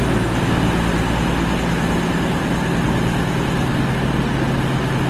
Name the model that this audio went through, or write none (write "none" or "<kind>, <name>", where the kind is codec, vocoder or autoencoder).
none